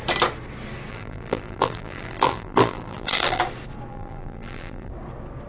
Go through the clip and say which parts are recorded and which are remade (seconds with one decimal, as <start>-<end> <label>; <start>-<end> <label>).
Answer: 0.0-0.9 recorded; 0.9-3.4 remade; 3.4-3.9 recorded; 3.9-4.9 remade; 4.9-5.5 recorded